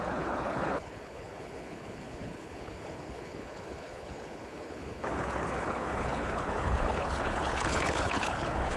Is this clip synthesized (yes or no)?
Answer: yes